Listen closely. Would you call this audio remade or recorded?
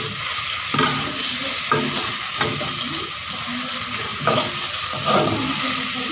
recorded